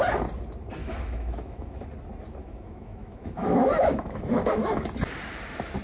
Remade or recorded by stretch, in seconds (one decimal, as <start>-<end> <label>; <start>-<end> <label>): 0.0-0.8 recorded; 0.8-1.7 remade; 1.7-2.4 recorded; 2.4-4.8 remade; 4.8-5.8 recorded

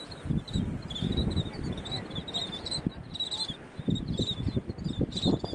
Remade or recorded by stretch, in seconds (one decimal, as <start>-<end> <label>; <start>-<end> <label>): 0.0-1.2 remade; 1.2-4.0 recorded; 4.0-5.5 remade

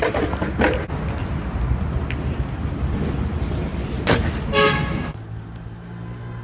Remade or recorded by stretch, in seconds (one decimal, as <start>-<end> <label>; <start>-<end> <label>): 0.0-6.4 recorded